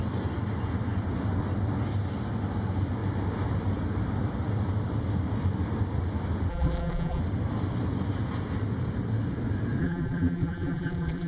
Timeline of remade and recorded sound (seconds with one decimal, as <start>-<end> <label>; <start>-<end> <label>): 0.0-6.5 recorded; 6.5-7.2 remade; 7.2-9.8 recorded; 9.8-11.3 remade